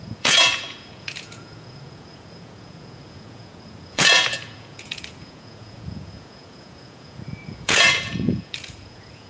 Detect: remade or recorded remade